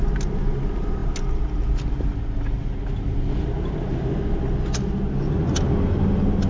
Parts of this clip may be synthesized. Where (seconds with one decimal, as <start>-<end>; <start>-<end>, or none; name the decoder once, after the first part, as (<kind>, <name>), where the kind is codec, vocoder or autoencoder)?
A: none